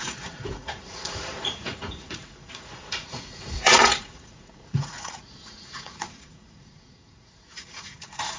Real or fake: fake